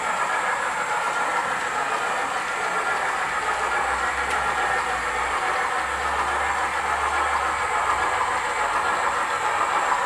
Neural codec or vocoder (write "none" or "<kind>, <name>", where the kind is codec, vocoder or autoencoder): none